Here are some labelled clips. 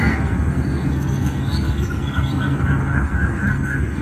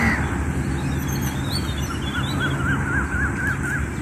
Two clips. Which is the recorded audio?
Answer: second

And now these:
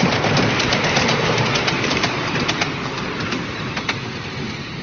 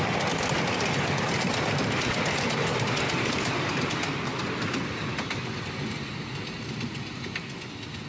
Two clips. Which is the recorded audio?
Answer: second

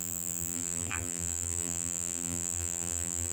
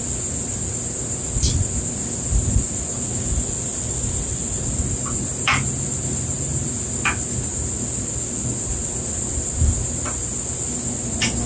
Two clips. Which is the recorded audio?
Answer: second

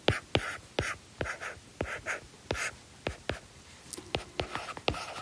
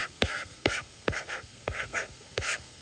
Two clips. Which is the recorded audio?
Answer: first